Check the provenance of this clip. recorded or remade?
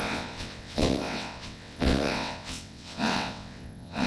remade